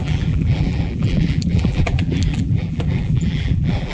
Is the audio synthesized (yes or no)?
yes